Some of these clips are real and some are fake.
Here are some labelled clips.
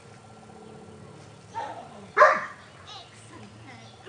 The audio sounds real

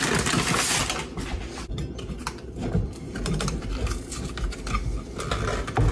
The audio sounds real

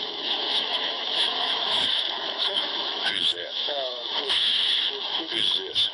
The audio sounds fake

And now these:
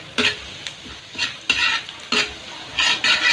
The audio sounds real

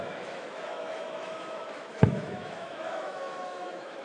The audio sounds fake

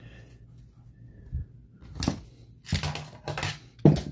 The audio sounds real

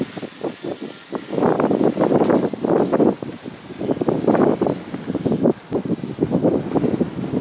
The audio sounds real